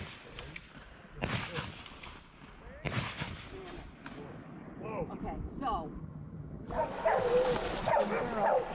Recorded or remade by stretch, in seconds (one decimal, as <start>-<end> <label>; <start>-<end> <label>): 0.0-6.0 recorded; 6.0-6.7 remade; 6.7-8.7 recorded